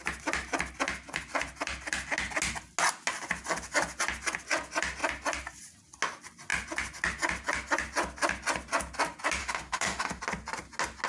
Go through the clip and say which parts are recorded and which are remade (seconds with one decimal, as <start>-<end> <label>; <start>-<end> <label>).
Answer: 0.0-9.4 recorded; 9.4-10.2 remade; 10.2-11.1 recorded